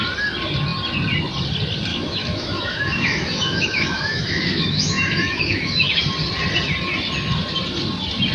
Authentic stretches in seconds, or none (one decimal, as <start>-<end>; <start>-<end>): 0.0-1.9; 6.0-8.3